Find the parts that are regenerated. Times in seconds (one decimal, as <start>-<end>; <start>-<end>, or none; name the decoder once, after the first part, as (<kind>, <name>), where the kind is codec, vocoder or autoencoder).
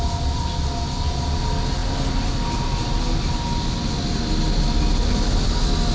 none